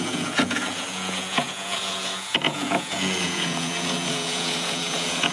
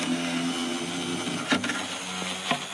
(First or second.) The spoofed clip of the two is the first